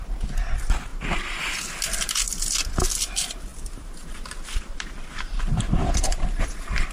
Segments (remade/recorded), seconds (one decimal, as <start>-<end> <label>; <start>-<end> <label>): 0.0-3.5 recorded; 3.5-5.4 remade; 5.4-6.9 recorded